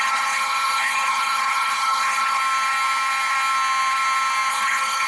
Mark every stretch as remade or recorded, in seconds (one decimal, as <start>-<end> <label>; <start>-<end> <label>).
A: 0.0-2.4 remade; 2.4-4.5 recorded; 4.5-5.1 remade